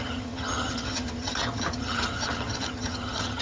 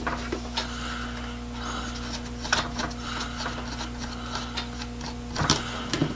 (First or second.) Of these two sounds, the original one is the second